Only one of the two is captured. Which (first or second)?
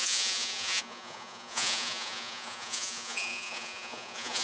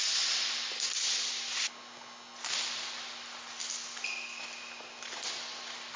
second